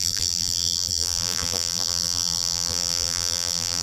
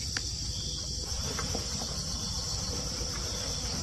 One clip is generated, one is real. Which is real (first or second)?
second